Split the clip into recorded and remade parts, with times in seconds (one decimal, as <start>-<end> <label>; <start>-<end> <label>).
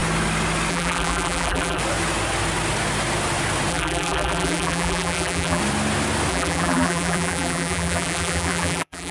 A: 0.0-0.7 recorded; 0.7-1.8 remade; 1.8-3.7 recorded; 3.7-5.6 remade; 5.6-6.3 recorded; 6.3-9.1 remade